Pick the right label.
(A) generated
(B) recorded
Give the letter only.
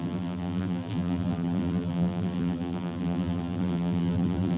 A